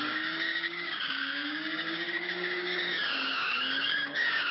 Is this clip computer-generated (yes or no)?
yes